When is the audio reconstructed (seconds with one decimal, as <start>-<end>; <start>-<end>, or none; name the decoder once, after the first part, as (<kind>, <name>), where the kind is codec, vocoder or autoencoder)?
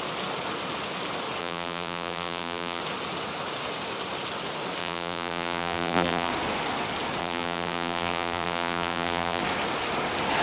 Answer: 1.4-2.8 (vocoder, BigVGAN v2); 4.8-6.3; 7.2-9.4